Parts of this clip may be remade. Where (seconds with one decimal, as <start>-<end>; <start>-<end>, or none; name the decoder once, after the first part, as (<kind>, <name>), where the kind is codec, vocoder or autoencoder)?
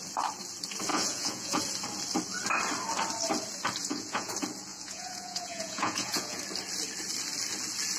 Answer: 0.9-1.6 (vocoder, Vocos); 3.8-4.3; 4.7-6.4